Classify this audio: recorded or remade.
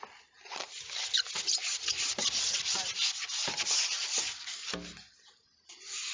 recorded